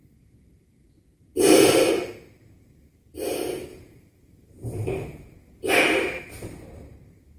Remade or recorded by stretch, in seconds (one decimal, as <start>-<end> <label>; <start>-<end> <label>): 0.0-3.7 recorded; 3.7-5.7 remade; 5.7-7.4 recorded